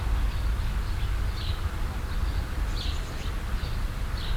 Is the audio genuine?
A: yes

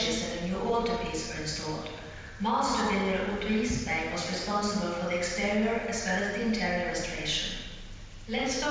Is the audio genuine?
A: yes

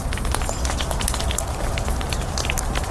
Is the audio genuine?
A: yes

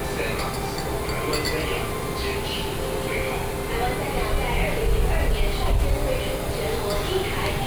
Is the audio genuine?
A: yes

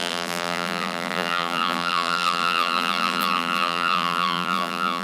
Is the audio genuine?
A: no